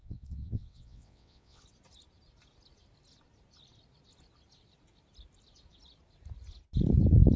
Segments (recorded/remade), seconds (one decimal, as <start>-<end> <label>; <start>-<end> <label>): 0.0-1.6 remade; 1.6-7.4 recorded

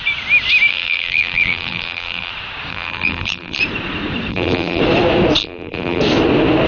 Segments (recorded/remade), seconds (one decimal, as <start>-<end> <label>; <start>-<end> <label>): 0.0-0.7 recorded; 0.7-2.3 remade; 2.3-2.7 recorded; 2.7-3.6 remade; 3.6-4.3 recorded; 4.3-4.8 remade; 4.8-5.4 recorded; 5.4-6.0 remade; 6.0-6.7 recorded

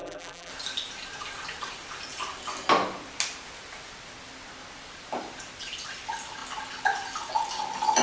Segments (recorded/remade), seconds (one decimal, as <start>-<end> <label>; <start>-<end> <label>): 0.0-0.5 remade; 0.5-8.0 recorded

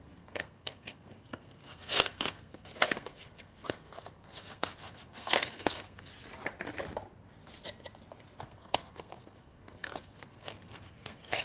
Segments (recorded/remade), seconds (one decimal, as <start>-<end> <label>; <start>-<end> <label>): 0.0-6.1 remade; 6.1-8.4 recorded; 8.4-11.4 remade

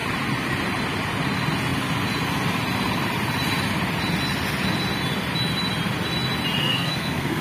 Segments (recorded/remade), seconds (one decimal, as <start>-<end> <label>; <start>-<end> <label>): 0.0-6.6 recorded; 6.6-7.4 remade

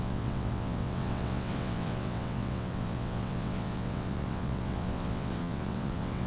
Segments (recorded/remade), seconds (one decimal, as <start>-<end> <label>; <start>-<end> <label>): 0.0-6.3 remade

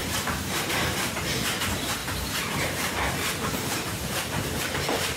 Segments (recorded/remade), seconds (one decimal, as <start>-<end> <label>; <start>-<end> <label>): 0.0-1.1 remade; 1.1-2.0 recorded; 2.0-4.6 remade; 4.6-5.2 recorded